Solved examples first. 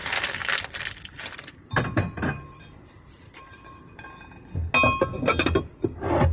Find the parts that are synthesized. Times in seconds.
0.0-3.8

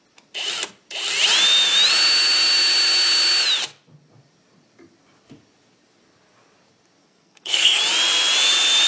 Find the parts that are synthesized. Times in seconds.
7.0-7.8

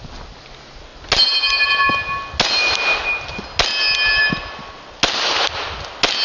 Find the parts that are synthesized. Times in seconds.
none

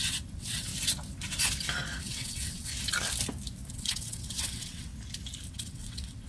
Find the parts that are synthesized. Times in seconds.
0.0-0.7; 2.0-2.7; 3.7-4.9; 5.5-6.3

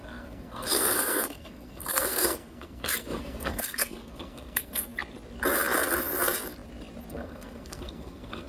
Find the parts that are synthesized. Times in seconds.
0.0-4.9; 7.1-8.5

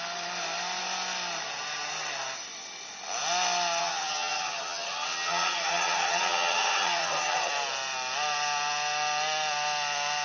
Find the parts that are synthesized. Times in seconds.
3.8-7.5

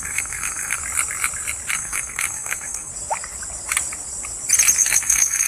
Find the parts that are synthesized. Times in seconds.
0.0-0.8; 1.7-2.9; 4.8-5.5